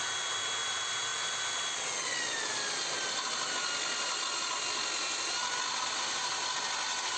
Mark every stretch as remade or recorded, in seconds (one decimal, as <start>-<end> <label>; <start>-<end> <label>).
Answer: 0.0-7.2 recorded